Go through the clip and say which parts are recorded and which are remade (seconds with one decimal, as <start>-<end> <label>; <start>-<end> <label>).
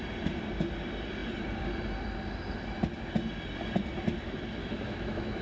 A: 0.0-4.6 recorded; 4.6-5.4 remade